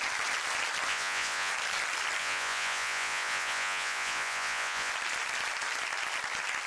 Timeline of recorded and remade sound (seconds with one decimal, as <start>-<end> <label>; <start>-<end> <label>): 0.0-0.9 recorded; 0.9-1.5 remade; 1.5-2.2 recorded; 2.2-4.9 remade; 4.9-6.7 recorded